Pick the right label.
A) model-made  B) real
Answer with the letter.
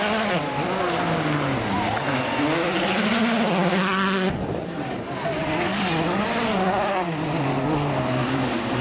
B